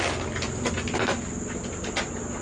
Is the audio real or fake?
real